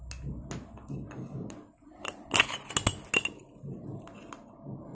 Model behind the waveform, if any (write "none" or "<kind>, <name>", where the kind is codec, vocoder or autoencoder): none